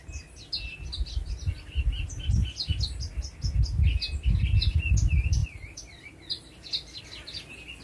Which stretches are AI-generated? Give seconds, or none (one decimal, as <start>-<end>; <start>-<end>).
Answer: 5.4-7.0